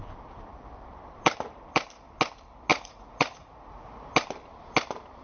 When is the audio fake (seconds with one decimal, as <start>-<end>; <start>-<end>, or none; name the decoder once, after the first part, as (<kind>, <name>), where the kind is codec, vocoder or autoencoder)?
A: 2.7-4.1 (vocoder, Vocos)